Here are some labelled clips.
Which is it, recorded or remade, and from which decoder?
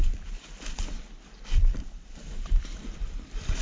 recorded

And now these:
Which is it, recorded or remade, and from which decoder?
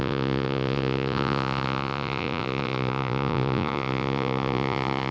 remade, vocoder, Vocos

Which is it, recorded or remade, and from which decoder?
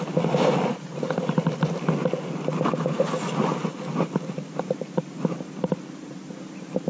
recorded